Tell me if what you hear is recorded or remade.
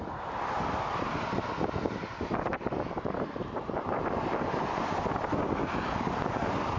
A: recorded